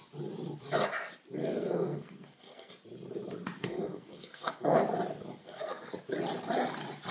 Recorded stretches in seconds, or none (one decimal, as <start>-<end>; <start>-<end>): 0.0-1.4; 2.7-3.6; 4.8-5.4; 5.9-7.1